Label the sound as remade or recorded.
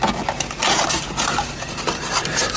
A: recorded